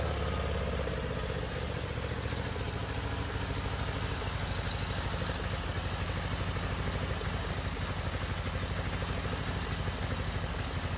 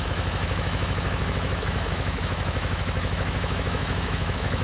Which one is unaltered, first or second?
first